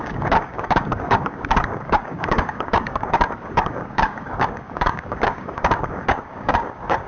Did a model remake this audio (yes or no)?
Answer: yes